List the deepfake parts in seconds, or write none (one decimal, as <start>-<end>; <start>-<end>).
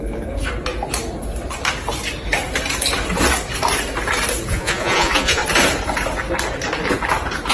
4.5-5.4